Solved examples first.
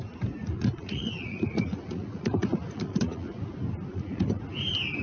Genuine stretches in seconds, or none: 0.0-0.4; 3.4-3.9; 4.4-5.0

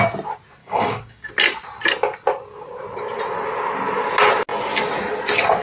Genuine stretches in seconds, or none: 0.0-0.6; 1.3-5.6